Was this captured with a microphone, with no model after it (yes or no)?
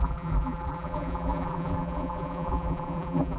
no